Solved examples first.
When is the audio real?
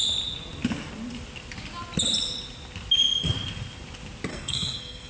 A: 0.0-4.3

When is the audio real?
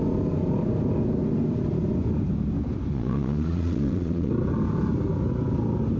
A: 0.0-2.9; 4.3-6.0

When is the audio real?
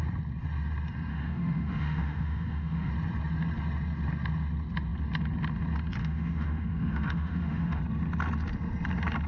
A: 0.0-1.1; 2.9-6.0; 7.8-9.3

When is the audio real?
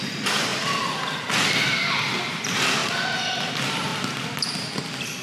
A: 0.0-5.2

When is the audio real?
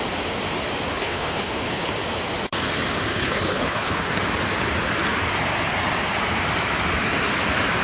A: 0.0-0.9; 1.9-3.1; 4.1-7.8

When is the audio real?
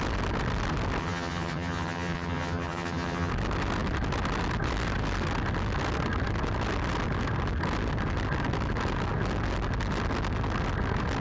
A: 0.0-1.0; 3.3-11.2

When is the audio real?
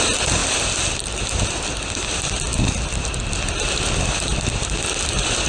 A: 0.0-5.5